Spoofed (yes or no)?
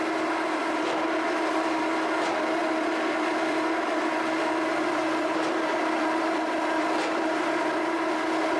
yes